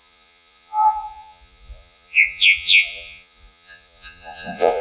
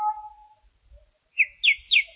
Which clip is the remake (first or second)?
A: first